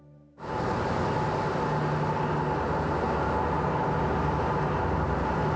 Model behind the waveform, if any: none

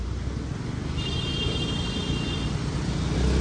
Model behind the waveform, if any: none